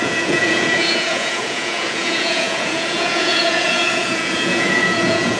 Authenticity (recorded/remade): remade